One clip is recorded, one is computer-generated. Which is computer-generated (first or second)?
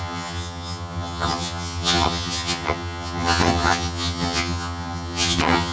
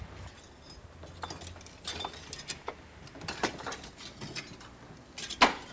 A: first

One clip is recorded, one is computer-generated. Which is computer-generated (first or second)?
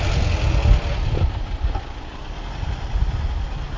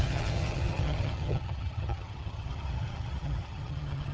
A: second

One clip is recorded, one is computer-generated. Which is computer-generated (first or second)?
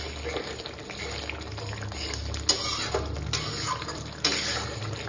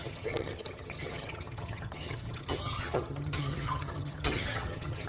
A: second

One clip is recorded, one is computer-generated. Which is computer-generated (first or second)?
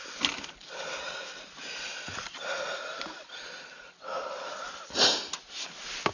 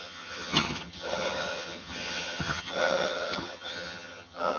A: second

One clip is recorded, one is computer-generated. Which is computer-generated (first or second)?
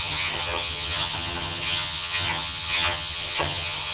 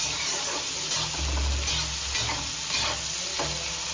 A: first